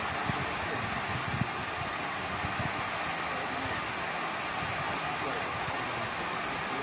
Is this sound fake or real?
real